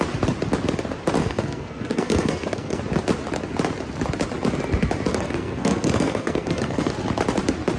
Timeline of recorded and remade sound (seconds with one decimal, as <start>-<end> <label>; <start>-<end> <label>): 0.0-1.2 recorded; 1.2-2.8 remade; 2.8-5.1 recorded; 5.1-6.9 remade; 6.9-7.8 recorded